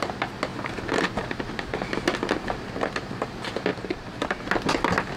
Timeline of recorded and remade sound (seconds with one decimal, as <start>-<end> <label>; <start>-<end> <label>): 0.0-0.5 recorded; 0.5-1.5 remade; 1.5-3.7 recorded; 3.7-4.4 remade; 4.4-5.2 recorded